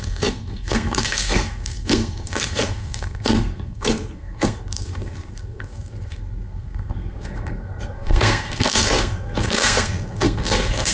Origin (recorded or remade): remade